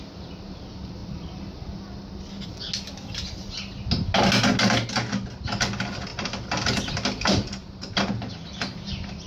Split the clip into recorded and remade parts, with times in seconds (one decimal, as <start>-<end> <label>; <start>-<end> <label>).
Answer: 0.0-1.0 recorded; 1.0-2.2 remade; 2.2-6.1 recorded; 6.1-8.3 remade; 8.3-9.3 recorded